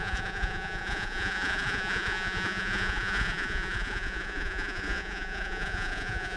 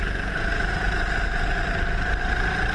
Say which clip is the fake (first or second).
first